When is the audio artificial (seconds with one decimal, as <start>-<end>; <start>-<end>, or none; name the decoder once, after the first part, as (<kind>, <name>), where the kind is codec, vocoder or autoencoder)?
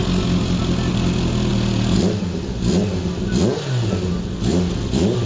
none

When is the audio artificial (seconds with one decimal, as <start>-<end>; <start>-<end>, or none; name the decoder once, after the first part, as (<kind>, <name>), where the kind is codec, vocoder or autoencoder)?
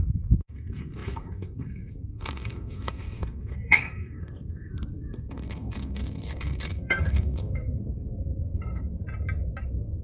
0.0-9.0 (codec, SNAC); 9.6-10.0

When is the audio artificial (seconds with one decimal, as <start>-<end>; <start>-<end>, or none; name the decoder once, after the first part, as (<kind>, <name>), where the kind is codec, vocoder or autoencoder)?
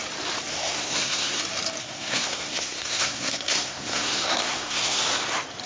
0.5-1.4 (codec, SNAC); 1.8-5.0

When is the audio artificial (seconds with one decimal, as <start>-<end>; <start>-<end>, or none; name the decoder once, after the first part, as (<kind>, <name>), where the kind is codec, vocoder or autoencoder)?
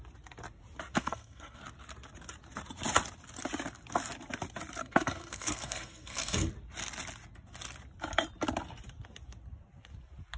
1.0-1.6 (codec, SNAC); 4.8-6.5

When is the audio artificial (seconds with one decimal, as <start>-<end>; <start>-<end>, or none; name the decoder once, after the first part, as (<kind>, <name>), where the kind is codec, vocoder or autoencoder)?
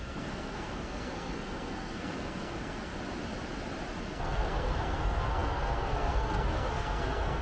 0.0-2.9 (codec, SNAC); 4.0-7.4